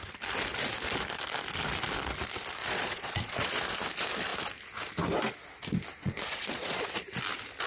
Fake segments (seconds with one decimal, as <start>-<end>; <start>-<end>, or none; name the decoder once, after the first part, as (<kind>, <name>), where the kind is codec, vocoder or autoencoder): 2.6-3.6 (vocoder, Vocos); 6.0-6.8